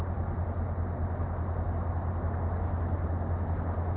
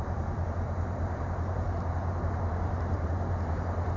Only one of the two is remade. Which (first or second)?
second